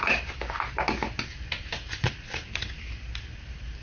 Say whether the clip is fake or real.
real